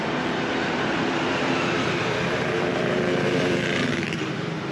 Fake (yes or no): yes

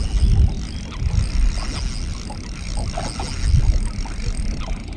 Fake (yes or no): no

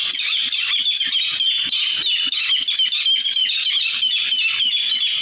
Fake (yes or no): no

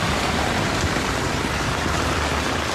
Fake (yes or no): no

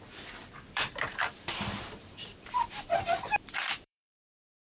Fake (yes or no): yes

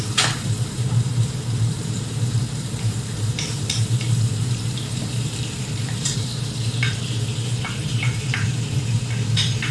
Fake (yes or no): yes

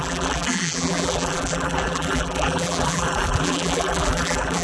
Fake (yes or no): yes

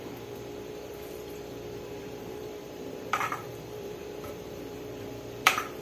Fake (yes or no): yes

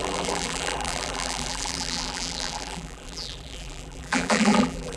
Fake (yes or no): yes